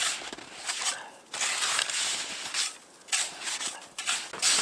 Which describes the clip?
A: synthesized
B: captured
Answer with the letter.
B